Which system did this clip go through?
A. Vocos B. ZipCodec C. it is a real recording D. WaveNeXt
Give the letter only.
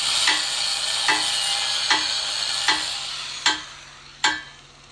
C